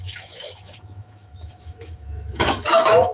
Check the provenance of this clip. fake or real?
fake